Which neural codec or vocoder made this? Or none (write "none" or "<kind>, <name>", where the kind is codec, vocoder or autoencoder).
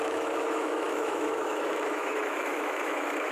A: autoencoder, DAC-VAE